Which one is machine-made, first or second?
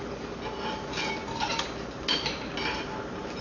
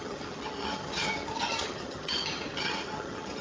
second